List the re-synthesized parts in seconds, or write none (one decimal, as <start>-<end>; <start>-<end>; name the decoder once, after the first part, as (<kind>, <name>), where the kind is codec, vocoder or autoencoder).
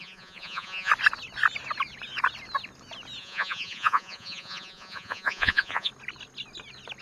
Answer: 0.0-0.9 (vocoder, Vocos); 3.2-5.9